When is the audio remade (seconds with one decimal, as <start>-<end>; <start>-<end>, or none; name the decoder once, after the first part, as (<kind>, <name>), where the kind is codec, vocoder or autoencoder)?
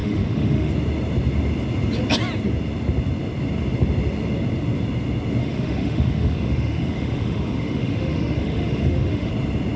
0.0-0.7 (autoencoder, DAC-VAE); 5.4-9.3